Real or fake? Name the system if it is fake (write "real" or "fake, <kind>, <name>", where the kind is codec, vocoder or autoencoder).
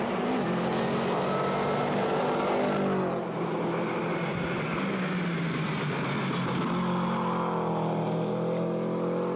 real